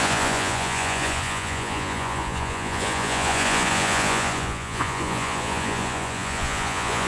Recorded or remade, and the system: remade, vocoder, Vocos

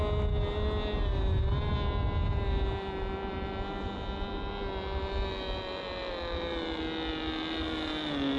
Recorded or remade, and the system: recorded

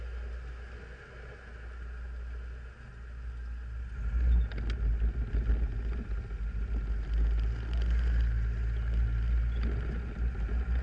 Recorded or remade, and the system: recorded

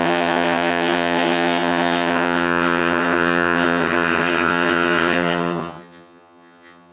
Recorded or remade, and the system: remade, vocoder, HiFi-GAN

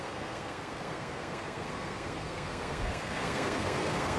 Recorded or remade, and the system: remade, codec, SNAC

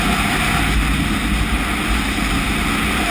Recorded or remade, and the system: recorded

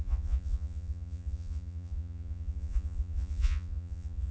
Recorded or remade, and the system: remade, vocoder, Vocos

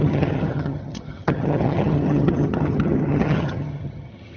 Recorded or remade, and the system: remade, vocoder, HiFi-GAN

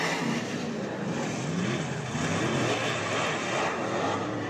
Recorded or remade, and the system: recorded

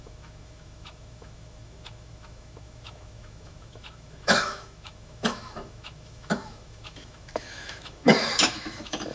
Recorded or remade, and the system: remade, autoencoder, DAC-VAE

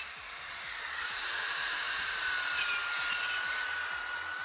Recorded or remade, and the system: recorded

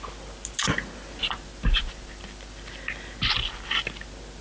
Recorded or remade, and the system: recorded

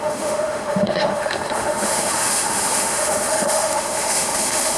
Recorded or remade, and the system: remade, autoencoder, DAC-VAE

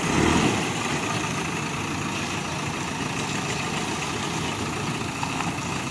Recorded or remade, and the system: recorded